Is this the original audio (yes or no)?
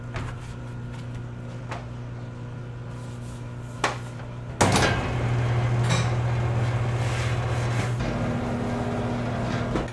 yes